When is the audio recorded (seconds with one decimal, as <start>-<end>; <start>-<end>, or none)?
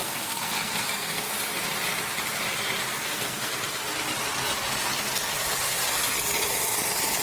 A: 1.3-2.9; 3.6-7.2